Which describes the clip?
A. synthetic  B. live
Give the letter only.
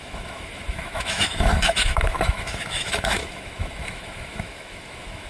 A